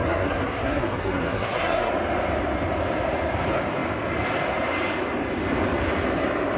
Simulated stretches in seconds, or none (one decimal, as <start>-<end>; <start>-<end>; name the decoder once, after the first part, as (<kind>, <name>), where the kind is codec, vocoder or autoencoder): 0.0-1.9 (codec, SNAC)